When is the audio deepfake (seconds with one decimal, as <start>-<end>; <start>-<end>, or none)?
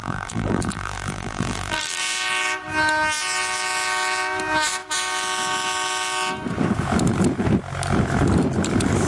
0.0-2.0